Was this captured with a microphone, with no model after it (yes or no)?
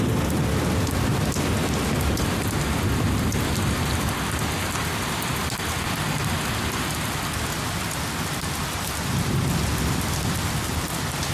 yes